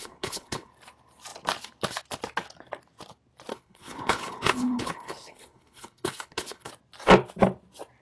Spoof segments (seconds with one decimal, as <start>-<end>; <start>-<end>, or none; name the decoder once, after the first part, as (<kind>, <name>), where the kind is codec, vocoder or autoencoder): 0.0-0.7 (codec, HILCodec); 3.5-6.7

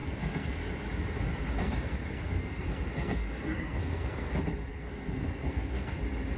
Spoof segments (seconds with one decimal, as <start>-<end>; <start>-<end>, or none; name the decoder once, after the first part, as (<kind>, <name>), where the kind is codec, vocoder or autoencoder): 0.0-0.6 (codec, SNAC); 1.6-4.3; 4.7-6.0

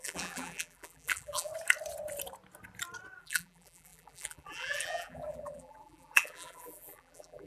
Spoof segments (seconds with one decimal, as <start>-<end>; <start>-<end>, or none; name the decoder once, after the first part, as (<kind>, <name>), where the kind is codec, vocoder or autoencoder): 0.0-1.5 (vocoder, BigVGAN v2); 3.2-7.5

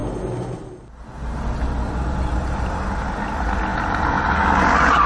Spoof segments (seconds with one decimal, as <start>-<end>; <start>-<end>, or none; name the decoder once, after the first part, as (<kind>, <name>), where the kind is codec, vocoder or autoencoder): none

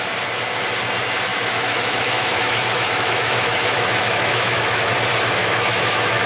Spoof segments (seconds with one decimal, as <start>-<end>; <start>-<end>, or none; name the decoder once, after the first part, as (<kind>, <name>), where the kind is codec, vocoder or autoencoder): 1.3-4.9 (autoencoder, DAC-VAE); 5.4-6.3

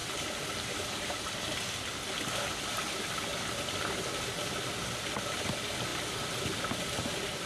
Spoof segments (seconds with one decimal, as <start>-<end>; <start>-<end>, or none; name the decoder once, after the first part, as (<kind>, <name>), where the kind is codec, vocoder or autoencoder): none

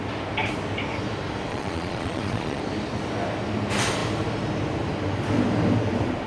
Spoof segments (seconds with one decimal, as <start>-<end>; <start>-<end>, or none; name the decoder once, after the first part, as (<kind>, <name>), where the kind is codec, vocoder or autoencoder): 1.5-2.6 (vocoder, Vocos)

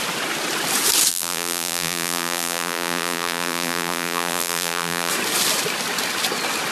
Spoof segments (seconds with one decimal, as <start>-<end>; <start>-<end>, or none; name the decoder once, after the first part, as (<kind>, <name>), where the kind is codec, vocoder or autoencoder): 1.1-5.1 (vocoder, BigVGAN v2)